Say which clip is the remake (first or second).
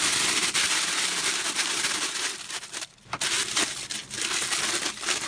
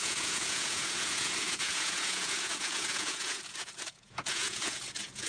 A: second